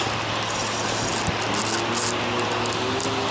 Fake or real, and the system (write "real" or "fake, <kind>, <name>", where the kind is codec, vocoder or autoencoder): real